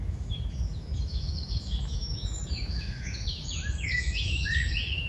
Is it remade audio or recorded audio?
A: remade